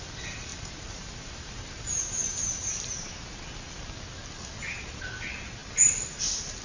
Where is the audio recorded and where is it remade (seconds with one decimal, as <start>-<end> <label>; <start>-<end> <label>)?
0.0-0.5 recorded; 0.5-3.1 remade; 3.1-6.6 recorded